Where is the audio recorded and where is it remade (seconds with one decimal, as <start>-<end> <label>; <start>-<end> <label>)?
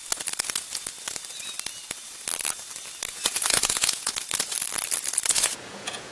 0.0-3.1 recorded; 3.1-4.1 remade; 4.1-5.3 recorded; 5.3-6.1 remade